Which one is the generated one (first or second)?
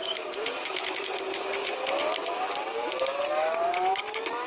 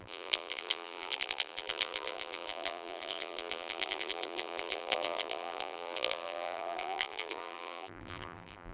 second